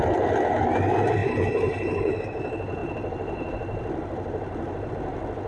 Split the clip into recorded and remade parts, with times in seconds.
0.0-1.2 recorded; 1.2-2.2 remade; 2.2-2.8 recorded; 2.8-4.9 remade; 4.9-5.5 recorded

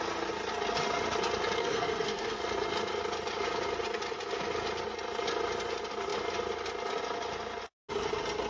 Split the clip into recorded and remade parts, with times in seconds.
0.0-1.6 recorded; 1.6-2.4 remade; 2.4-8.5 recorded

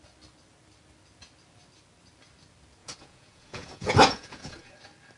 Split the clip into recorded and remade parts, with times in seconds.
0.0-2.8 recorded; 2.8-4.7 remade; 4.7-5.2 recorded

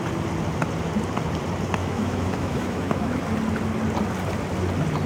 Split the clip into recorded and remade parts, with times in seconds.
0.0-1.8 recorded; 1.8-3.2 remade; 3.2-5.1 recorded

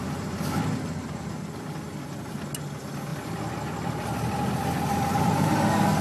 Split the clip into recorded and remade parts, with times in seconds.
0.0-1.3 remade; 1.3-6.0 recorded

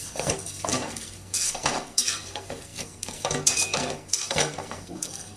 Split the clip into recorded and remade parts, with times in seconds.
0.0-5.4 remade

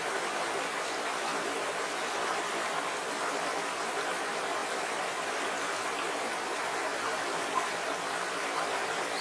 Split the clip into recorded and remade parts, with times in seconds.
0.0-1.3 recorded; 1.3-2.5 remade; 2.5-9.2 recorded